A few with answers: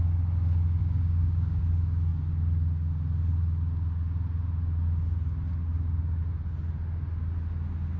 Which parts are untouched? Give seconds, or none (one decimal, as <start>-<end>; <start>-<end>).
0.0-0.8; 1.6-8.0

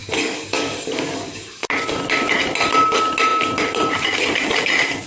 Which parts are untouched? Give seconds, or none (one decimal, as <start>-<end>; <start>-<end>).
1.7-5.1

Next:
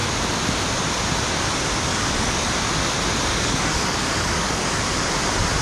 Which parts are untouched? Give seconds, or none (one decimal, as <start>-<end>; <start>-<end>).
0.0-1.9; 2.5-3.3; 4.8-5.6